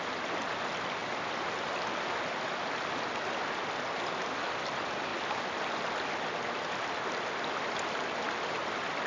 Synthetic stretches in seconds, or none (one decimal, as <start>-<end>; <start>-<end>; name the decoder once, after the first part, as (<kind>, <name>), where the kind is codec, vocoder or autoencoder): none